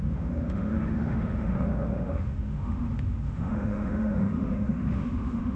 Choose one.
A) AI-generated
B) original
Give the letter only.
A